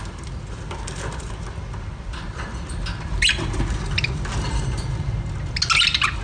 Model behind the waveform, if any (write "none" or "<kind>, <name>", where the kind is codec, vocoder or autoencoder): none